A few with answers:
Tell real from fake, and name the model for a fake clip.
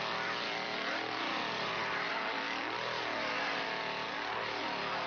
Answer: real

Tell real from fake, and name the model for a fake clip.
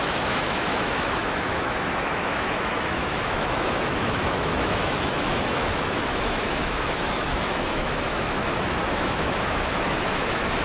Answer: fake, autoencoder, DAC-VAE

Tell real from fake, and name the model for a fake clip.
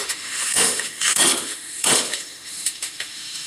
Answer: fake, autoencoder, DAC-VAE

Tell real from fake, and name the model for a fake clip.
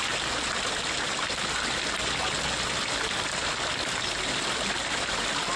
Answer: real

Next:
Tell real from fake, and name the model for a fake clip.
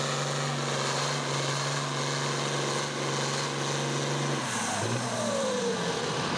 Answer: real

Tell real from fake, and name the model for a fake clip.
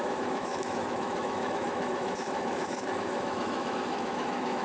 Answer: fake, autoencoder, DAC-VAE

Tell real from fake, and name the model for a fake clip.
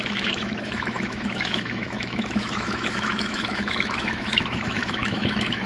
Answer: fake, autoencoder, DAC-VAE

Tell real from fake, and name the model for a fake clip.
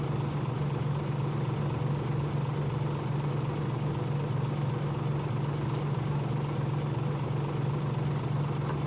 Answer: real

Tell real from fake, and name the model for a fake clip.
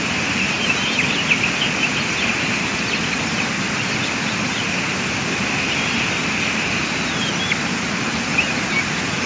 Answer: real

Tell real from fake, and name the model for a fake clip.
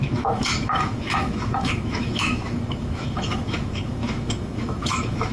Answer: fake, autoencoder, DAC-VAE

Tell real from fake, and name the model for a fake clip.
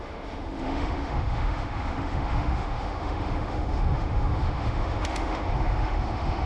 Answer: fake, autoencoder, DAC-VAE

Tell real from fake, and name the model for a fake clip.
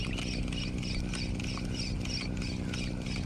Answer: real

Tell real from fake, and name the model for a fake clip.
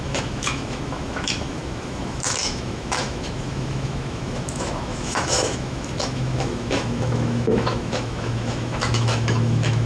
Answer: fake, autoencoder, DAC-VAE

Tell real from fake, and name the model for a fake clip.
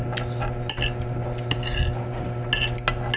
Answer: real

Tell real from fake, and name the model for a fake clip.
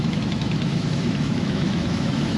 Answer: fake, autoencoder, DAC-VAE